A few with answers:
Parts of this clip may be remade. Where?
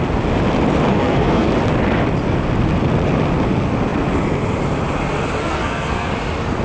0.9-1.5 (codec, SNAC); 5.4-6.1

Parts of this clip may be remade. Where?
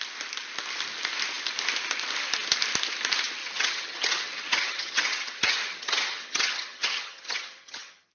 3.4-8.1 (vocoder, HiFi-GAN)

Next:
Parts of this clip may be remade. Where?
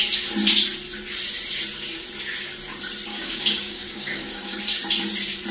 3.1-4.6 (codec, DAC)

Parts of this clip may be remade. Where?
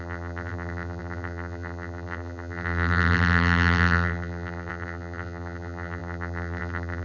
0.0-7.0 (vocoder, BigVGAN v2)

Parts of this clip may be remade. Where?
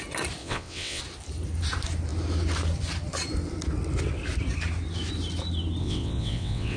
0.4-1.0 (vocoder, WaveNeXt); 5.8-6.8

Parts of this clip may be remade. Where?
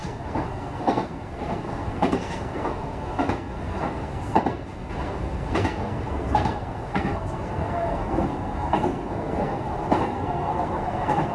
0.0-11.3 (codec, SNAC)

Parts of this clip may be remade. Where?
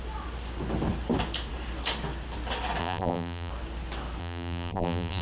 2.8-3.5 (vocoder, BigVGAN v2); 4.2-5.2